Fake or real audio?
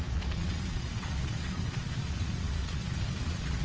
fake